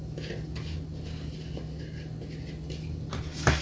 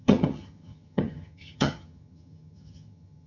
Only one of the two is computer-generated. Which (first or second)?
second